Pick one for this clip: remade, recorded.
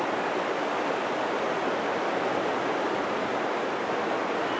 recorded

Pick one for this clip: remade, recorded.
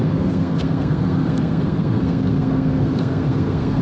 remade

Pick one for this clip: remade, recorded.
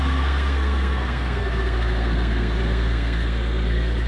remade